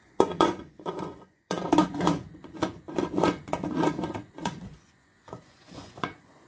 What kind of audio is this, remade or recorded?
remade